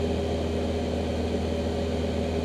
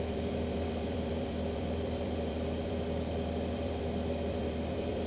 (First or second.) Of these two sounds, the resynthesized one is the second